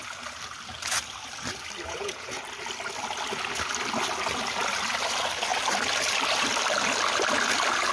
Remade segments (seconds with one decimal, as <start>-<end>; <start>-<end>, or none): 1.9-2.4